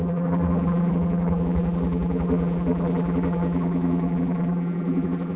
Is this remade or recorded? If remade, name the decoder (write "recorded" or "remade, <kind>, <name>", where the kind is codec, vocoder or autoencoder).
remade, vocoder, BigVGAN v2